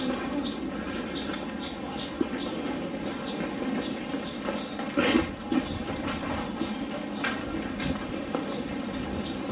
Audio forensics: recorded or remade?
recorded